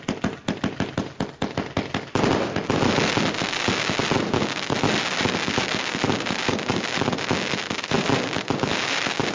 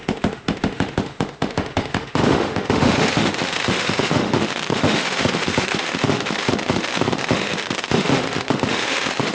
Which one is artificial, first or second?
second